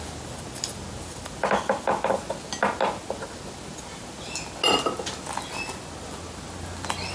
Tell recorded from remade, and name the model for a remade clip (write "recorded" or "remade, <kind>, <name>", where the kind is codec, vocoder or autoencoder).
recorded